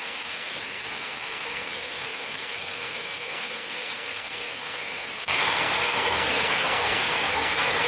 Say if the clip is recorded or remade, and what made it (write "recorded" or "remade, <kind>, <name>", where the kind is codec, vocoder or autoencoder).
remade, codec, SNAC